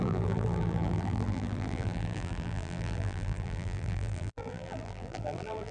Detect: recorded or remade remade